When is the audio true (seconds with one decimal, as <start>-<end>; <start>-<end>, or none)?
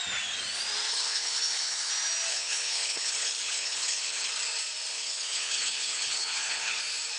0.0-0.9; 1.9-2.3; 4.3-4.9; 6.8-7.2